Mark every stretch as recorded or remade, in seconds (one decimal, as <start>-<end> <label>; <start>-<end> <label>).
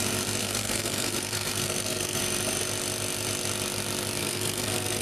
0.0-0.4 recorded; 0.4-2.2 remade; 2.2-4.2 recorded; 4.2-5.0 remade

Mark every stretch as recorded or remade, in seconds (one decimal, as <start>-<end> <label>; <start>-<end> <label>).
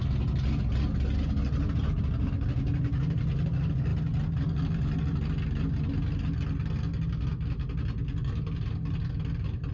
0.0-9.7 recorded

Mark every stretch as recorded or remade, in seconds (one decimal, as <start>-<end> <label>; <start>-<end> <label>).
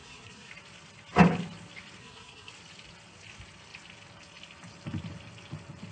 0.0-0.5 remade; 0.5-2.0 recorded; 2.0-2.5 remade; 2.5-5.9 recorded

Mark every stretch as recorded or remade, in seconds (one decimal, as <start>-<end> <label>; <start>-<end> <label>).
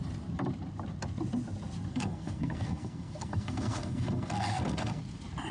0.0-1.9 recorded; 1.9-5.0 remade; 5.0-5.5 recorded